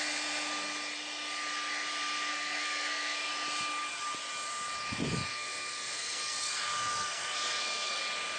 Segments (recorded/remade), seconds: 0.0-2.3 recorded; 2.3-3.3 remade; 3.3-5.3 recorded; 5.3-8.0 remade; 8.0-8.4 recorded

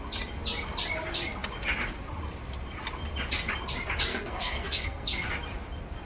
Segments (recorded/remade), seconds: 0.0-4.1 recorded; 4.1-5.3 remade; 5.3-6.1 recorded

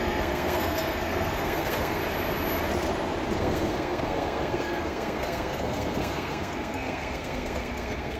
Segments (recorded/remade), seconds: 0.0-2.0 remade; 2.0-3.4 recorded; 3.4-8.2 remade

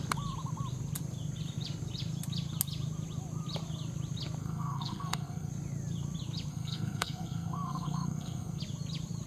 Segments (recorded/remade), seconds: 0.0-4.4 recorded; 4.4-5.5 remade; 5.5-6.5 recorded; 6.5-8.6 remade; 8.6-9.3 recorded

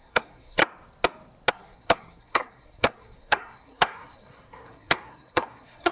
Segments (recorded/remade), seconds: 0.0-0.6 remade; 0.6-1.5 recorded; 1.5-5.9 remade

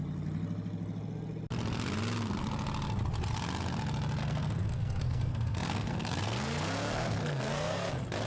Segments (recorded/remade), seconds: 0.0-4.2 recorded; 4.2-7.9 remade; 7.9-8.3 recorded

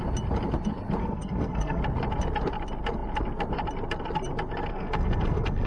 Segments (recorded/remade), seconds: 0.0-1.0 recorded; 1.0-1.8 remade; 1.8-4.7 recorded; 4.7-5.7 remade

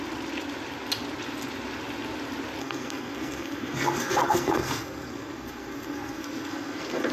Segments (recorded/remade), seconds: 0.0-2.6 recorded; 2.6-7.1 remade